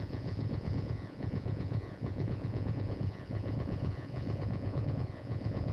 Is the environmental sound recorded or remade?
remade